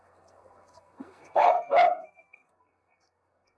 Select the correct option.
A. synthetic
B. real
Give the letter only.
A